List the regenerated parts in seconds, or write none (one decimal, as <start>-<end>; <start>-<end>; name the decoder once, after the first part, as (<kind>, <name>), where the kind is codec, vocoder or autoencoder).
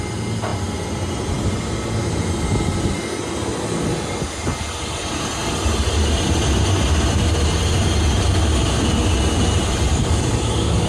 9.9-10.9 (codec, DAC)